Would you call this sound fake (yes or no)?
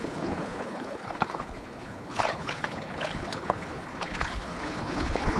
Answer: yes